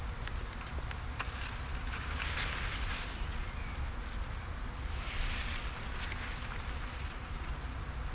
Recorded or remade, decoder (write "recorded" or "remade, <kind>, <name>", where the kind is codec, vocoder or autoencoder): recorded